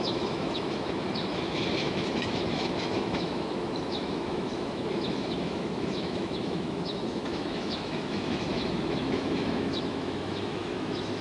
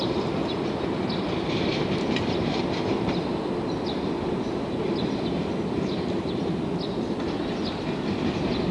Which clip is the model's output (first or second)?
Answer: first